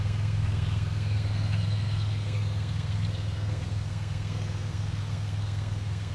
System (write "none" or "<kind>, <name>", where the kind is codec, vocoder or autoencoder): codec, SNAC